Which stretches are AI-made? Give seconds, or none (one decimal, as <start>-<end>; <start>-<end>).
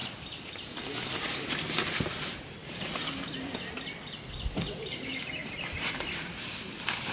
1.5-2.6; 4.8-7.1